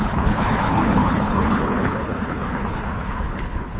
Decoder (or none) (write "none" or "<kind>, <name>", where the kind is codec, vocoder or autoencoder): codec, HILCodec